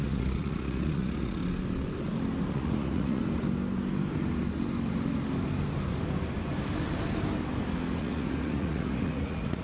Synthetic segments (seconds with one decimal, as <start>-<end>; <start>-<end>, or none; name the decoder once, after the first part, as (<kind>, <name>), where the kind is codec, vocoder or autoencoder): 0.0-1.4 (vocoder, Vocos); 2.5-3.2; 8.0-9.6